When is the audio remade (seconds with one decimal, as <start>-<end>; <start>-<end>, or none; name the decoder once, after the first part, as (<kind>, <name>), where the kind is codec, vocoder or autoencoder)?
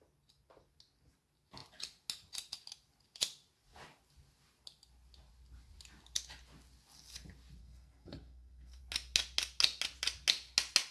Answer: 7.6-8.8 (codec, SNAC)